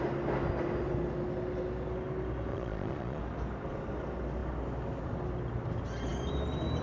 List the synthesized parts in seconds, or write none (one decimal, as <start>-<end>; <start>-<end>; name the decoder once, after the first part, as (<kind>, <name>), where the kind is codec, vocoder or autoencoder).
2.5-3.2 (vocoder, Vocos)